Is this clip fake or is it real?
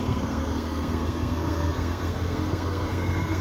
fake